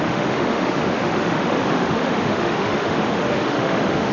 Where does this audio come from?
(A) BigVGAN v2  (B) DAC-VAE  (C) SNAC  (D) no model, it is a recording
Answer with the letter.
B